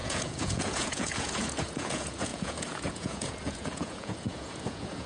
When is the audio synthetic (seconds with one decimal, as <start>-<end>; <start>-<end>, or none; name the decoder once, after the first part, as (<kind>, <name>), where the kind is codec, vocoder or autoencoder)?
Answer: 0.0-5.1 (vocoder, Vocos)